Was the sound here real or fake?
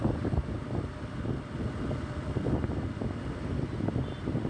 real